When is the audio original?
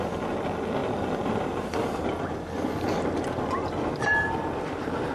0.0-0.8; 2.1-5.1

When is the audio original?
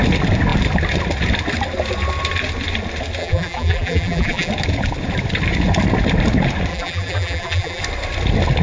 0.0-3.2; 4.5-6.7; 7.8-8.6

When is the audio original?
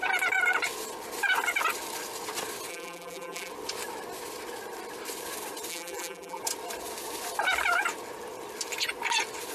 0.0-2.7; 3.5-5.7; 6.4-9.5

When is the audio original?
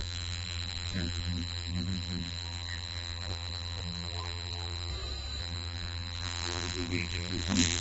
4.9-5.4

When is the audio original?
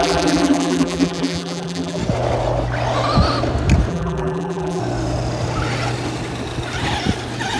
2.0-3.9; 4.8-7.6